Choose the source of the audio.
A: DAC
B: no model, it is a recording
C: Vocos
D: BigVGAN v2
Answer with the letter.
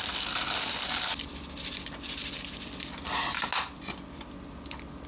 B